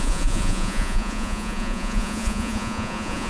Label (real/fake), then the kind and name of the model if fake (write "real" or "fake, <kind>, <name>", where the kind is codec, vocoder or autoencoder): fake, vocoder, Vocos